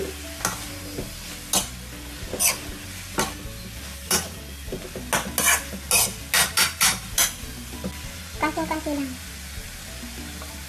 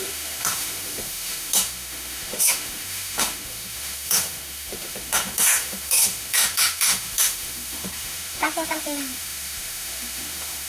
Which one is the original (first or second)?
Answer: first